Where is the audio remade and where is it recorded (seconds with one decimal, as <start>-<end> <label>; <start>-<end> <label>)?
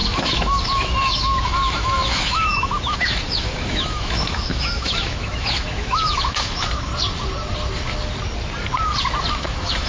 0.0-6.9 remade; 6.9-9.3 recorded; 9.3-9.9 remade